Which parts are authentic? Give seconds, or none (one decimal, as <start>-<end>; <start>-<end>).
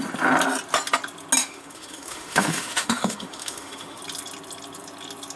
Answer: 0.0-1.4; 4.0-5.4